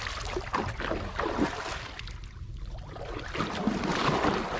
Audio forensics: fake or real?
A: real